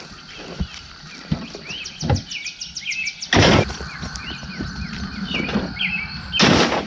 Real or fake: real